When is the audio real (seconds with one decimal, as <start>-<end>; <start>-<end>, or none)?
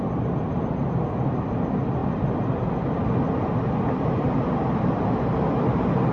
0.0-6.1